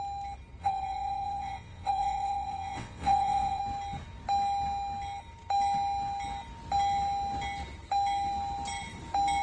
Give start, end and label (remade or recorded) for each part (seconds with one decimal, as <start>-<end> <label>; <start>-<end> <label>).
0.0-0.6 recorded; 0.6-3.6 remade; 3.6-9.4 recorded